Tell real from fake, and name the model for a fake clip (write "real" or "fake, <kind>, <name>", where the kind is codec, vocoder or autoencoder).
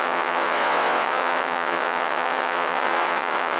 fake, vocoder, WaveNeXt